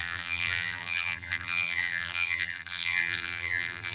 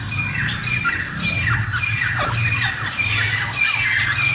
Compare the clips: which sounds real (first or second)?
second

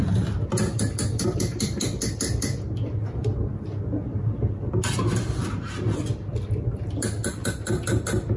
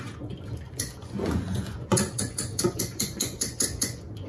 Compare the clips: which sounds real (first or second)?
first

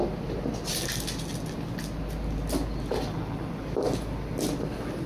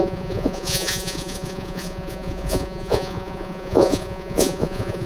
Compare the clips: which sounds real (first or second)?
first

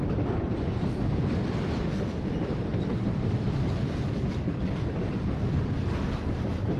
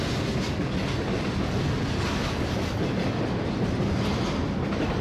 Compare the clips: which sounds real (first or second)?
second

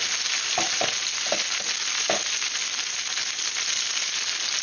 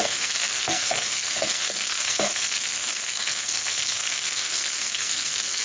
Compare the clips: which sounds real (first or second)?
first